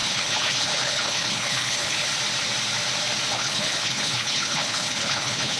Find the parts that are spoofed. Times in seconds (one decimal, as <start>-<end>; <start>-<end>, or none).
0.0-2.1; 3.3-5.6